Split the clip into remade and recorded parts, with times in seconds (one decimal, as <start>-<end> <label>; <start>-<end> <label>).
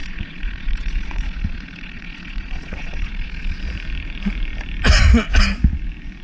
0.0-3.6 remade; 3.6-6.2 recorded